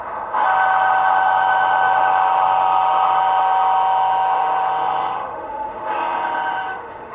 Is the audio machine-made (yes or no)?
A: yes